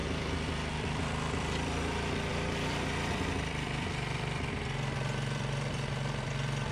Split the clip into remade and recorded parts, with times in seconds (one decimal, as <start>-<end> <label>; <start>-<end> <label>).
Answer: 0.0-6.7 remade